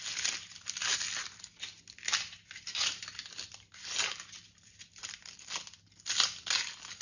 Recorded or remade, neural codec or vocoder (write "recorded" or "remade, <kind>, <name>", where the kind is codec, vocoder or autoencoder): recorded